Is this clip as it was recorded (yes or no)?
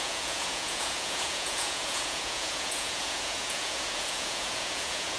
no